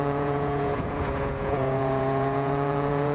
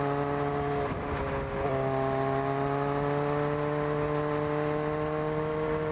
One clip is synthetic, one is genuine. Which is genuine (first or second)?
second